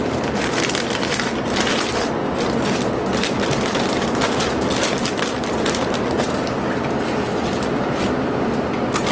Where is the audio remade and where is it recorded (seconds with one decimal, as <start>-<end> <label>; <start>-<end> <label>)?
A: 0.0-9.1 recorded